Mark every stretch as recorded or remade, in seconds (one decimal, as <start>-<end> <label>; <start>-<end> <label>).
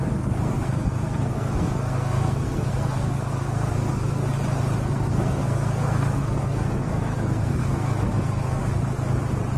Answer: 0.0-4.2 remade; 4.2-4.8 recorded; 4.8-8.6 remade; 8.6-9.6 recorded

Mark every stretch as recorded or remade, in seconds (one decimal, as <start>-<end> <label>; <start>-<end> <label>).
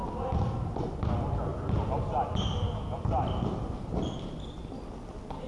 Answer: 0.0-5.5 recorded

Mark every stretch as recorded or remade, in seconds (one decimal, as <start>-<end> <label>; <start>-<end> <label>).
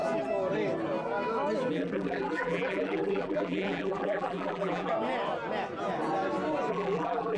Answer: 0.0-1.7 recorded; 1.7-4.9 remade; 4.9-6.7 recorded; 6.7-7.4 remade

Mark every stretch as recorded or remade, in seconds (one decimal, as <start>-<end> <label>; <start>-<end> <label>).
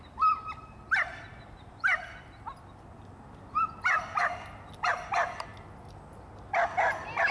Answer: 0.0-7.3 recorded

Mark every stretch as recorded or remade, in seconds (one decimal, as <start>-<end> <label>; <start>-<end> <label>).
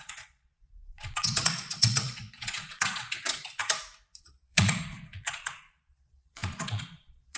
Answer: 0.0-3.6 remade; 3.6-4.2 recorded; 4.2-7.4 remade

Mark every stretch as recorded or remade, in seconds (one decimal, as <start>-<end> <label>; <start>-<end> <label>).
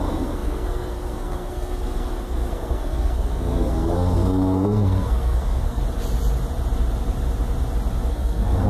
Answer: 0.0-5.8 remade; 5.8-8.1 recorded; 8.1-8.7 remade